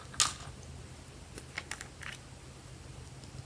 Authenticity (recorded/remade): recorded